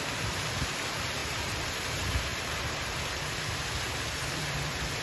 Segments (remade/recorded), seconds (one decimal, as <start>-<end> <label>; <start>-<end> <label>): 0.0-5.0 recorded

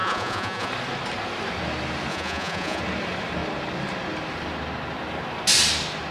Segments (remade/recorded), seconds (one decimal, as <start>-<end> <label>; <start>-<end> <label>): 0.0-0.7 remade; 0.7-2.1 recorded; 2.1-2.8 remade; 2.8-6.1 recorded

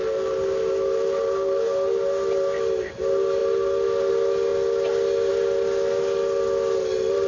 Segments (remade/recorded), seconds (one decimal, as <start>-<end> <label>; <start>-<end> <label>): 0.0-7.3 recorded

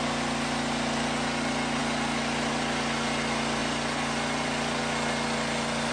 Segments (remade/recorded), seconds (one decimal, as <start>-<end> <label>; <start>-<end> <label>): 0.0-5.9 recorded

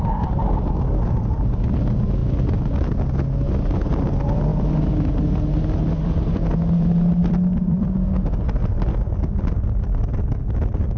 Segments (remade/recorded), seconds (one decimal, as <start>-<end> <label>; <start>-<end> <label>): 0.0-11.0 recorded

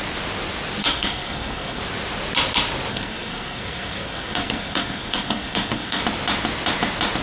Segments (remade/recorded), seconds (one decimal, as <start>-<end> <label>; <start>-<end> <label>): 0.0-0.8 recorded; 0.8-1.8 remade; 1.8-2.9 recorded; 2.9-6.0 remade; 6.0-7.2 recorded